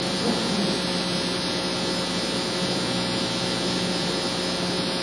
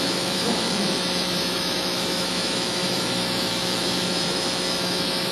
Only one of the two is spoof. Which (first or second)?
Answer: second